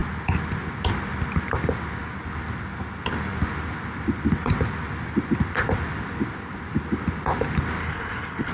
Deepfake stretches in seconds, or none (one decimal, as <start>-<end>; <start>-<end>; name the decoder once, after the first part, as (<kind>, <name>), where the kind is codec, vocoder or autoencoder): 7.8-8.5 (codec, HILCodec)